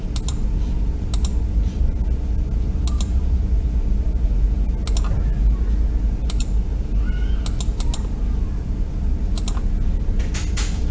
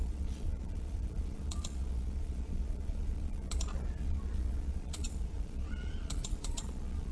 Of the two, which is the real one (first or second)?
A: first